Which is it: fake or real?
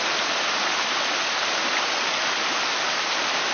real